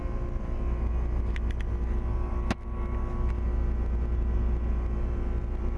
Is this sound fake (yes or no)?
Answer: no